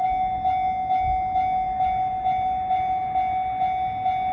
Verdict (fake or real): real